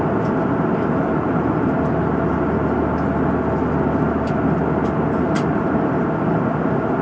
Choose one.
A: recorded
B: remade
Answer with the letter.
A